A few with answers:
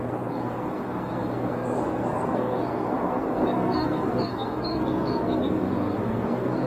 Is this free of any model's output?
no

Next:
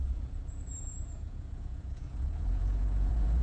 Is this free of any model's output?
no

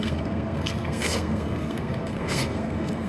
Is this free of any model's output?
no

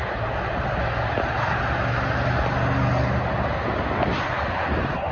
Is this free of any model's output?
yes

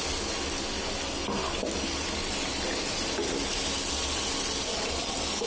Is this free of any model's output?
yes